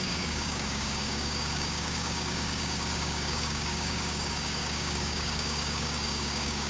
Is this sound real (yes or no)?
no